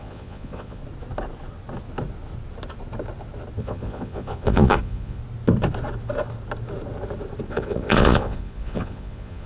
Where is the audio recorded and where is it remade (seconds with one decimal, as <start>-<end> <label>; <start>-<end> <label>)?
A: 0.0-0.8 remade; 0.8-3.6 recorded; 3.6-5.2 remade; 5.2-7.5 recorded; 7.5-9.5 remade

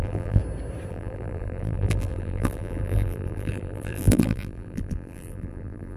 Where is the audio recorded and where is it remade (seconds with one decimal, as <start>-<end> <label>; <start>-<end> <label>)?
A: 0.0-0.4 remade; 0.4-0.9 recorded; 0.9-6.0 remade

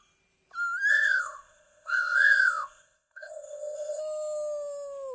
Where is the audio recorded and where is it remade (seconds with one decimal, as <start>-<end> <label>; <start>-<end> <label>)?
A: 0.0-0.9 recorded; 0.9-4.0 remade; 4.0-5.1 recorded